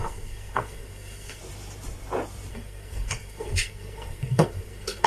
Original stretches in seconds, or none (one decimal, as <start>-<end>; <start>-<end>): 1.4-2.5